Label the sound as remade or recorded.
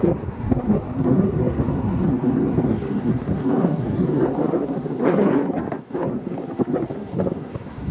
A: remade